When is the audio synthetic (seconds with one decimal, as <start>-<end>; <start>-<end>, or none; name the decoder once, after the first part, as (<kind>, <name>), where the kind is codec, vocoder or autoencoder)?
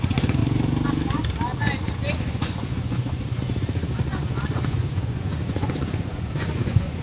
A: 0.0-0.4 (vocoder, Vocos); 2.1-7.0